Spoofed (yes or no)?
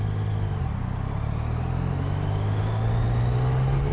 no